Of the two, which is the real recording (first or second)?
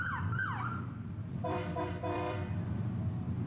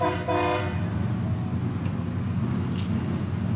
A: second